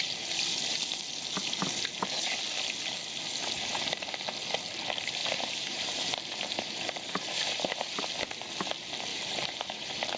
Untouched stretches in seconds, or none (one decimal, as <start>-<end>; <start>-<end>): 0.0-5.2; 8.0-9.1